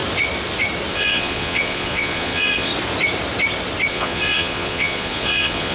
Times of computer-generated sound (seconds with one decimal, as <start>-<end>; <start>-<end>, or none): 0.9-2.7; 3.9-5.7